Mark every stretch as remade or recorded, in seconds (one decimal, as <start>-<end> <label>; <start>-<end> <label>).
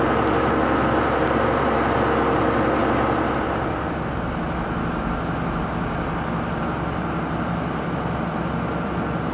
0.0-9.3 recorded